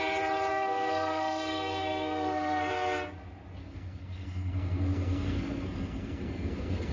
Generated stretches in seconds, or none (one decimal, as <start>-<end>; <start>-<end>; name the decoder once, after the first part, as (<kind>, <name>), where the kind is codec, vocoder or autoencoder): 0.5-2.7 (codec, SNAC); 3.6-6.9

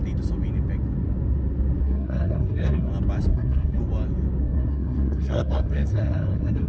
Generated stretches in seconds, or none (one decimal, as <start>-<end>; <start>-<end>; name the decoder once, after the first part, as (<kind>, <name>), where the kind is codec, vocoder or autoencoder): 1.8-2.9 (codec, SNAC); 3.3-3.8; 4.4-6.7

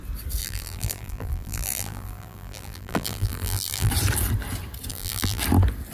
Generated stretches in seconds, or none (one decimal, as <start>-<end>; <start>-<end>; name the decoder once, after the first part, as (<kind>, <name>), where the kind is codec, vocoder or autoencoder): 0.4-3.9 (vocoder, BigVGAN v2); 4.9-5.4

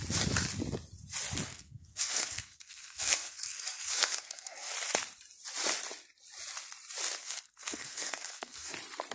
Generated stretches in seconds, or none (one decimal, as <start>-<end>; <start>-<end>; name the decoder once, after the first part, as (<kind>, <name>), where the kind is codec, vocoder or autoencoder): 1.5-4.7 (codec, SNAC); 7.2-8.7

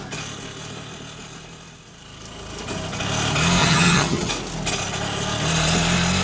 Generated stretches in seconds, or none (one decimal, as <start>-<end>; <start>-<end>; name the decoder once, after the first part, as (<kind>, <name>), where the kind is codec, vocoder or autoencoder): 3.6-4.3 (vocoder, HiFi-GAN)

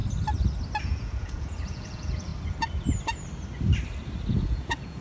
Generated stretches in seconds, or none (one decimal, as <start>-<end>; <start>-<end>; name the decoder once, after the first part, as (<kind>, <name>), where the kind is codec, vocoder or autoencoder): 0.8-2.3 (vocoder, Vocos); 4.3-5.0

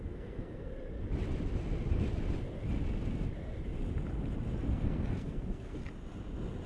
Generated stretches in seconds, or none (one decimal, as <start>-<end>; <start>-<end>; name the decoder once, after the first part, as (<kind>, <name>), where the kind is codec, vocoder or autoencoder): 0.0-0.7 (codec, SNAC); 4.7-5.8

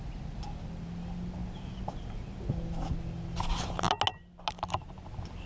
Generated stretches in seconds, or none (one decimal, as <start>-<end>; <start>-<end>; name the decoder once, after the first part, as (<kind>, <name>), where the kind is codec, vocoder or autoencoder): none